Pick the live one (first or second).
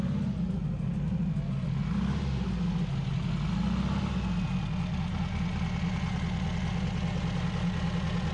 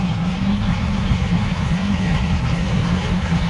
first